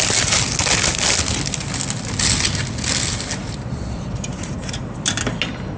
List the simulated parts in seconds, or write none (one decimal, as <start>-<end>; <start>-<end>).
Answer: 3.4-5.1